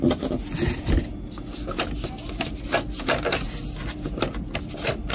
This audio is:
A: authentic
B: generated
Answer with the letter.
A